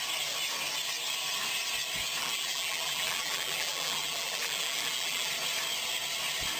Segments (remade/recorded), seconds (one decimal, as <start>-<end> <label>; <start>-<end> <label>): 0.0-2.2 recorded; 2.2-5.3 remade; 5.3-6.6 recorded